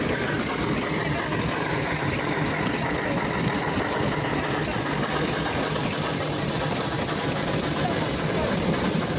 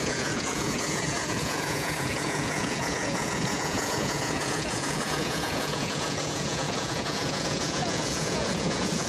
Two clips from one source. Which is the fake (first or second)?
second